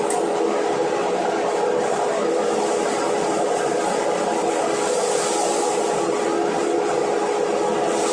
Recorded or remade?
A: recorded